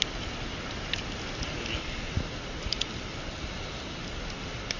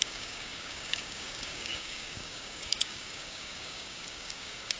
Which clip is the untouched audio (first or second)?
first